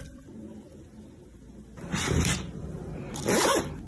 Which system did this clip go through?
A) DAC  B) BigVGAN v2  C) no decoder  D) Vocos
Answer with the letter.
B